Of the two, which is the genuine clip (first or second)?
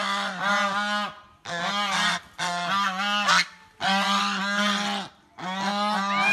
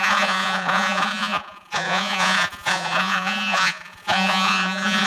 first